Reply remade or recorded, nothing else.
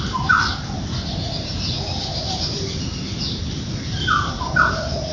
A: recorded